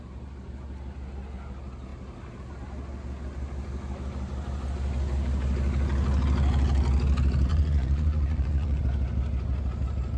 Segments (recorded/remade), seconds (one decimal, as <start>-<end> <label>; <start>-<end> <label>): 0.0-7.5 recorded; 7.5-8.8 remade; 8.8-10.2 recorded